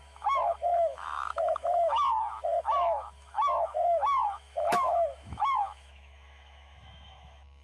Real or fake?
fake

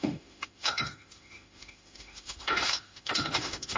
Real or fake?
fake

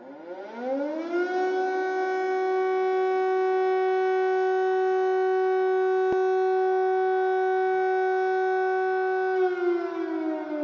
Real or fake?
real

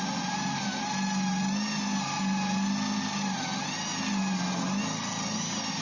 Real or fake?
real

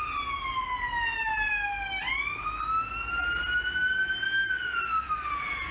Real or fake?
real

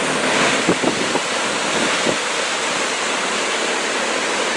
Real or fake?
real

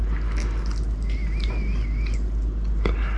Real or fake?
real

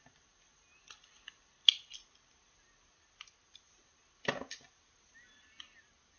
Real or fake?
real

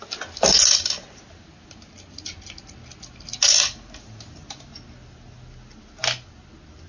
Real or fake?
real